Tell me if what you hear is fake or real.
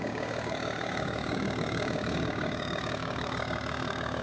fake